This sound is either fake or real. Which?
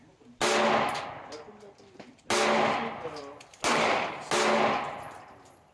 real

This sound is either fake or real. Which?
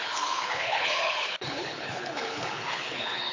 fake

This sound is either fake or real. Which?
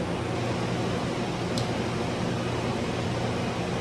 real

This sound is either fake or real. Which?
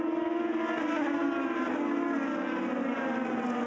real